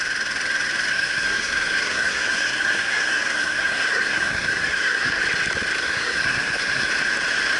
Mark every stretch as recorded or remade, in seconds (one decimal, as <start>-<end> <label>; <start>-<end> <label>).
0.0-0.9 recorded; 0.9-5.2 remade; 5.2-5.8 recorded; 5.8-6.9 remade; 6.9-7.6 recorded